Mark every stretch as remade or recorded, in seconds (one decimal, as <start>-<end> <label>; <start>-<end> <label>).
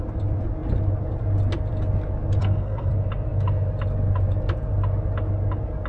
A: 0.0-2.4 recorded; 2.4-2.9 remade; 2.9-5.9 recorded